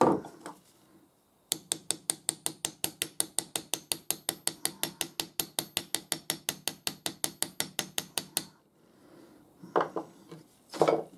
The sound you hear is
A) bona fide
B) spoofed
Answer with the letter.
A